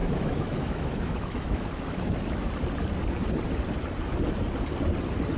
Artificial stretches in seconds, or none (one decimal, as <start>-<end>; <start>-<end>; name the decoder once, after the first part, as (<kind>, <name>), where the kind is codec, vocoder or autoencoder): 0.0-2.5 (autoencoder, DAC-VAE)